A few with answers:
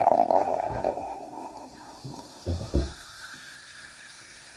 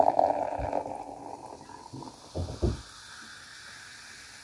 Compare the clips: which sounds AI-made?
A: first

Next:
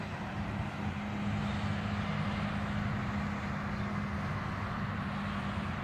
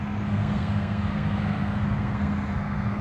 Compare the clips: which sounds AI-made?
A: second